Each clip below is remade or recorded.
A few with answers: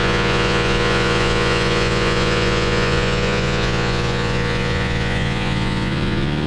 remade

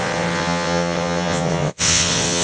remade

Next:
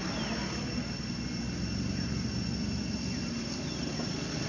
recorded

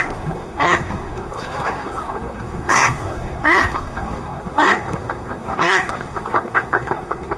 remade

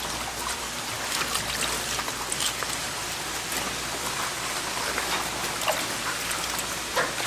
recorded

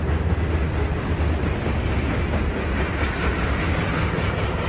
recorded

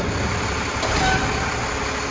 recorded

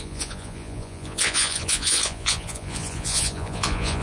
remade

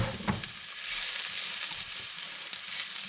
recorded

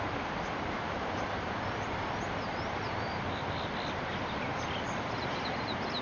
remade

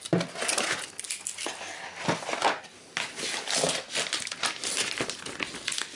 recorded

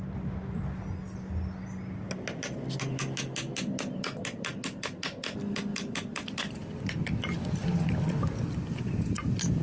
recorded